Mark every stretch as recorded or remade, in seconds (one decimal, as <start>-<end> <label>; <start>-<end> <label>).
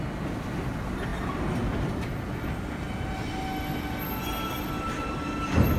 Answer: 0.0-5.8 recorded